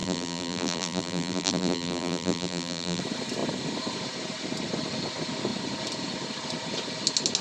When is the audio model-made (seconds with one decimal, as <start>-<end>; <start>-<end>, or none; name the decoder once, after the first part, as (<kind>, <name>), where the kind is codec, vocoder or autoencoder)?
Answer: 0.0-3.0 (vocoder, BigVGAN v2)